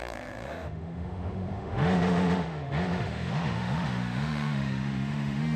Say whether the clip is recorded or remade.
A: remade